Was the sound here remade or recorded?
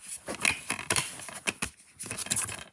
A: recorded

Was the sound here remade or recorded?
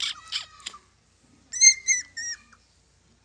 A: recorded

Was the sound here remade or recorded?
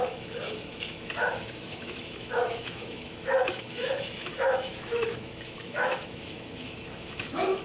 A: remade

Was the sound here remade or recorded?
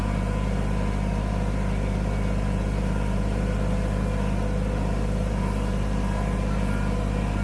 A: recorded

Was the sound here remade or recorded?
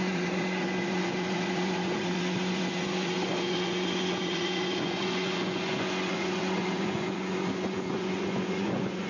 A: remade